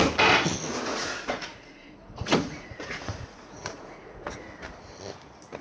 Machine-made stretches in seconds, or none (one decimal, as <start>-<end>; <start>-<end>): 0.9-4.3

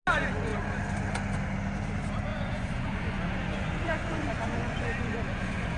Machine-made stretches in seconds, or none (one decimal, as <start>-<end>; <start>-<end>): 2.3-5.8